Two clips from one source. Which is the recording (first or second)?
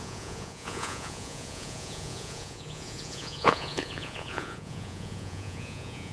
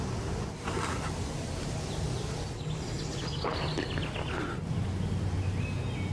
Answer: second